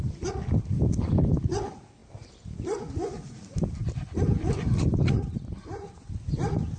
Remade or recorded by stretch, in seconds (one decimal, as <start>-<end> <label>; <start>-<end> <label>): 0.0-6.8 recorded